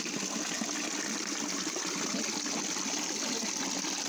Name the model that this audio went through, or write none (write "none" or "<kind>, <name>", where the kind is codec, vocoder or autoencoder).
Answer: none